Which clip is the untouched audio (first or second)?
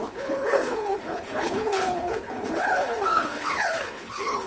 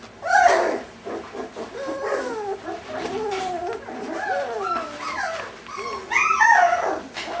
second